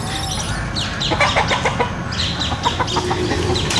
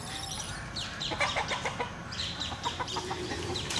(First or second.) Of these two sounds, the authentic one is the first